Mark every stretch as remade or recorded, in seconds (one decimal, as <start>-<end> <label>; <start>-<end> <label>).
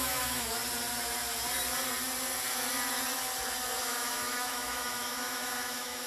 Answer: 0.0-0.6 remade; 0.6-3.8 recorded; 3.8-6.1 remade